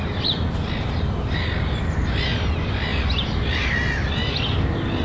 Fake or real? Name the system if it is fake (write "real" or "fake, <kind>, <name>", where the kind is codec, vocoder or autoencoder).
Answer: real